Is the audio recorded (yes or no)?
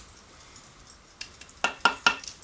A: yes